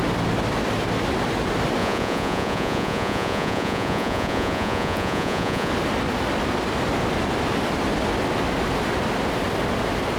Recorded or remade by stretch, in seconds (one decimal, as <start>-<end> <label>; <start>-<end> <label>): 0.0-1.8 recorded; 1.8-5.7 remade; 5.7-10.2 recorded